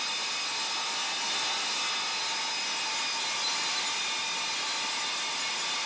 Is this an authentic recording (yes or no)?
yes